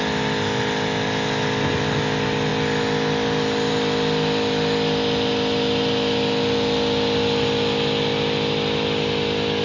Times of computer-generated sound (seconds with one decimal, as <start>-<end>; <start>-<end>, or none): none